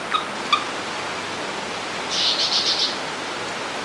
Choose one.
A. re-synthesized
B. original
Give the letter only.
B